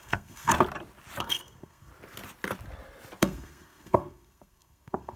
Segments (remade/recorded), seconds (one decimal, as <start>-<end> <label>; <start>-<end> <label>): 0.0-0.5 remade; 0.5-1.2 recorded; 1.2-1.9 remade; 1.9-3.2 recorded; 3.2-5.2 remade